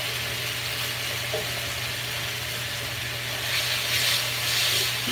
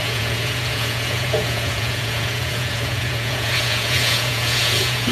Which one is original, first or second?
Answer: first